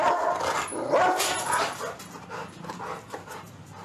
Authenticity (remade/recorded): recorded